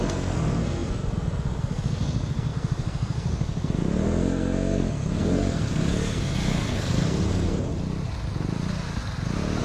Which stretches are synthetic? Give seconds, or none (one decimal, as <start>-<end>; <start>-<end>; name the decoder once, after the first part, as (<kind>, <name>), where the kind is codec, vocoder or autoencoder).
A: 0.0-7.7 (codec, SNAC)